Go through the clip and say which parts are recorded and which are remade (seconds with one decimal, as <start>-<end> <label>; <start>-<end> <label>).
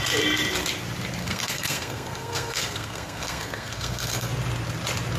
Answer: 0.0-1.2 recorded; 1.2-4.3 remade; 4.3-5.2 recorded